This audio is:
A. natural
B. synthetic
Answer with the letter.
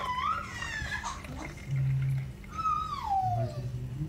A